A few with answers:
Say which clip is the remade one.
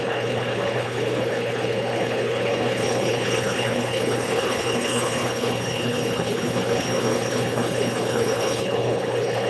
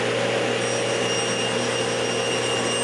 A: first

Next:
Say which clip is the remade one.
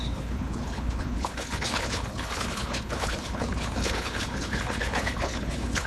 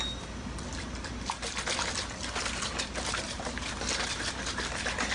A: first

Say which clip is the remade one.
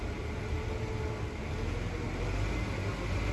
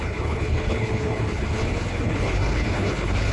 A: second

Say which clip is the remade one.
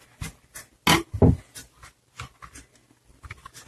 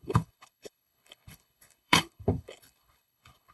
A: second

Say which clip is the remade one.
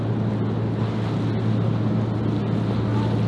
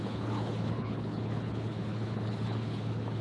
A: second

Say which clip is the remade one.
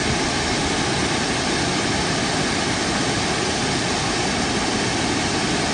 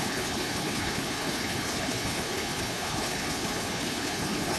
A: second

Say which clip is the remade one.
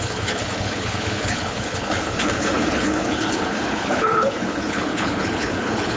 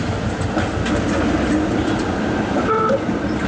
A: first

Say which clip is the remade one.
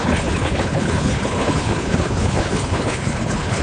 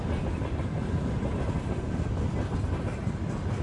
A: first